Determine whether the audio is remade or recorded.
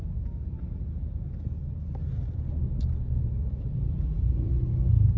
recorded